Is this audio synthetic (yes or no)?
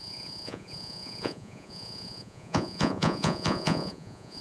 yes